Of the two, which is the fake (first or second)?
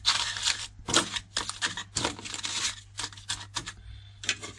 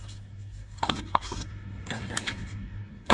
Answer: second